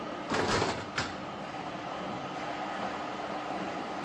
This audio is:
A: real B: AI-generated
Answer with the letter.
A